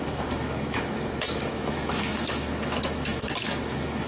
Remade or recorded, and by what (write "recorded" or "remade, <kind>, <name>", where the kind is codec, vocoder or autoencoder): remade, autoencoder, DAC-VAE